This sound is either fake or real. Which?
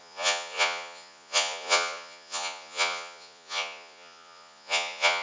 fake